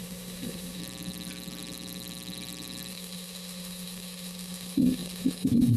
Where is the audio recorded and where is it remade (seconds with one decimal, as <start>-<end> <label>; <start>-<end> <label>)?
0.0-0.8 remade; 0.8-2.9 recorded; 2.9-5.8 remade